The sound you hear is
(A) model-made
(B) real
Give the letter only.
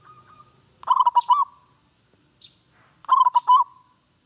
B